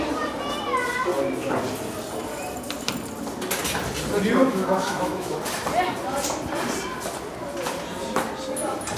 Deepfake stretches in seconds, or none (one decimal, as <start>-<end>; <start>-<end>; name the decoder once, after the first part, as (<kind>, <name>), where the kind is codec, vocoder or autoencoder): 4.4-5.4 (autoencoder, DAC-VAE)

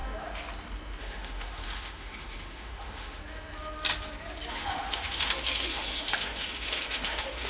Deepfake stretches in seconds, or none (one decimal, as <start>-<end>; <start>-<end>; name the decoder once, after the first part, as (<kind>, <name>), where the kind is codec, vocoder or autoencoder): 1.0-3.2 (autoencoder, DAC-VAE); 4.5-7.5